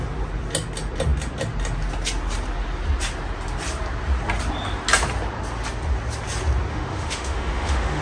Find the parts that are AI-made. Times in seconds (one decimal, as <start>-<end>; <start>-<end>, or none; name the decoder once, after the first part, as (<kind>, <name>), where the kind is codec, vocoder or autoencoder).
6.7-8.0 (autoencoder, DAC-VAE)